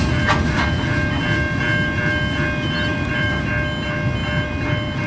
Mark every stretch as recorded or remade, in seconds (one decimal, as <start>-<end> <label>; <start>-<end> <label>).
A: 0.0-2.9 recorded; 2.9-3.5 remade; 3.5-5.1 recorded